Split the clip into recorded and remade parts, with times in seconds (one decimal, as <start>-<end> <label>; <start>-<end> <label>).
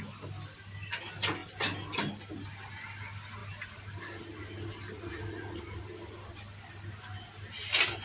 0.0-8.0 recorded